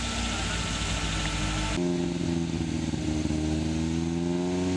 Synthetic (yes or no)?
no